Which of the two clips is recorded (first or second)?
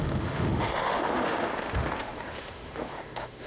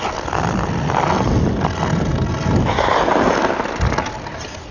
second